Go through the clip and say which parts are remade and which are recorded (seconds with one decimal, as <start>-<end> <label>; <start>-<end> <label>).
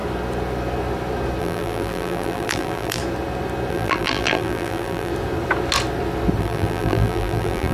0.0-1.4 recorded; 1.4-3.0 remade; 3.0-3.7 recorded; 3.7-5.1 remade; 5.1-6.4 recorded; 6.4-7.7 remade